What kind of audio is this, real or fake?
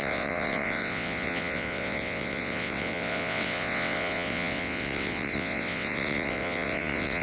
fake